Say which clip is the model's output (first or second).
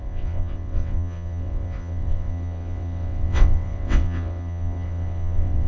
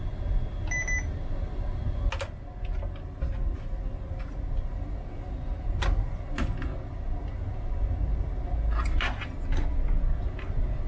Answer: first